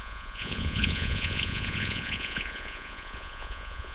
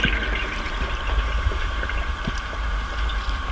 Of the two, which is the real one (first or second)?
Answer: second